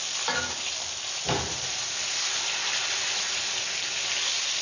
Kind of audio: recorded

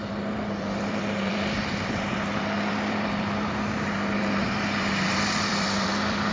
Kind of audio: remade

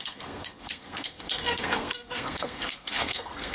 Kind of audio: remade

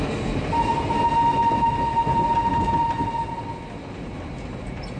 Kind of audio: recorded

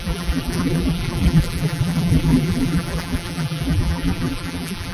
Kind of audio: remade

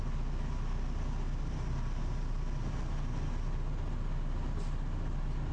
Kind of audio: recorded